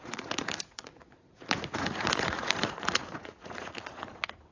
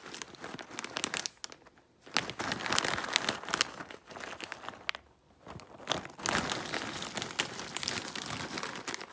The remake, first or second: first